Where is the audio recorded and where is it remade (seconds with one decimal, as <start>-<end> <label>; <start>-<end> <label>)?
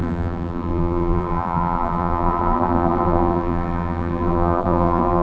0.0-5.2 remade